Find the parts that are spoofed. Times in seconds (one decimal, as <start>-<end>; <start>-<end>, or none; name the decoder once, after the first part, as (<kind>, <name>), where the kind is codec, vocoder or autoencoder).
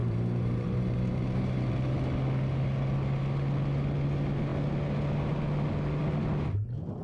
0.0-1.7 (vocoder, BigVGAN v2)